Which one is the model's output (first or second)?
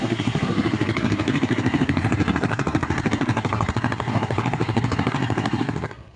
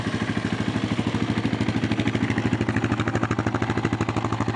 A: first